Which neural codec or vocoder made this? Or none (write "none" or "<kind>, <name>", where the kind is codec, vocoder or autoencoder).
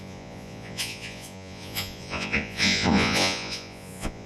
vocoder, Vocos